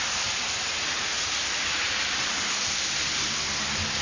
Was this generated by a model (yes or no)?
no